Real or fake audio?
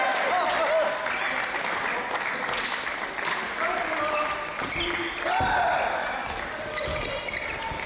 real